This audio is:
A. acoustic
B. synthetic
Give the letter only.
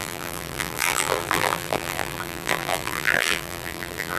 B